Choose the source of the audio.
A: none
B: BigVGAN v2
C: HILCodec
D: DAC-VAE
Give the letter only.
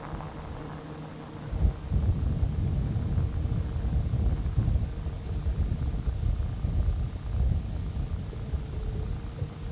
A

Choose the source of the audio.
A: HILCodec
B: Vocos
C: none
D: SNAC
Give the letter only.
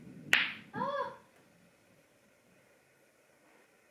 C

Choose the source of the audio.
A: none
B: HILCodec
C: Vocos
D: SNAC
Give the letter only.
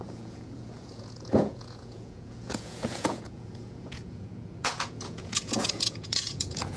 C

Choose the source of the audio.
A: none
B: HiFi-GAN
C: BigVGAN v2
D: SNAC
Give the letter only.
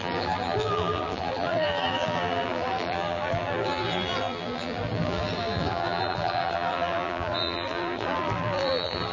C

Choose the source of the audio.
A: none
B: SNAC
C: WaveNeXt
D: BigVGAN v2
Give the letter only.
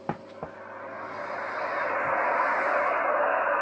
A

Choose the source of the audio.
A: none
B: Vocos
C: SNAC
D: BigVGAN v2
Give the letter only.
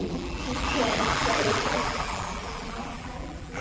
D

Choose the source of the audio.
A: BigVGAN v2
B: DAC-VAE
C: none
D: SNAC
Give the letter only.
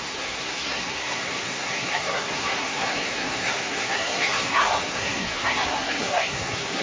D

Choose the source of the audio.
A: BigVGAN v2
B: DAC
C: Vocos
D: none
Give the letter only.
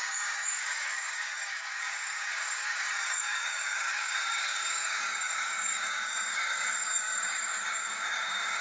B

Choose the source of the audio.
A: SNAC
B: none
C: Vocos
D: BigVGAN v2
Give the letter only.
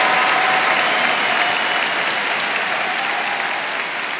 B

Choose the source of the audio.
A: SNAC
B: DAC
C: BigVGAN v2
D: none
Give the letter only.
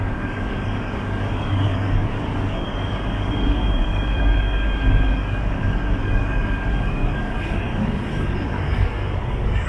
B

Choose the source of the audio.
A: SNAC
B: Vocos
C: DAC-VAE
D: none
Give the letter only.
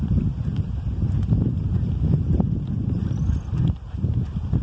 D